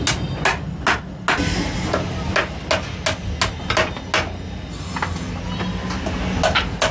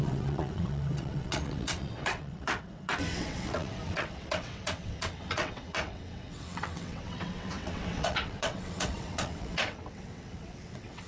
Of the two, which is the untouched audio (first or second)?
first